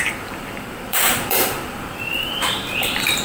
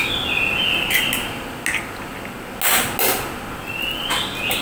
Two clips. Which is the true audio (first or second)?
second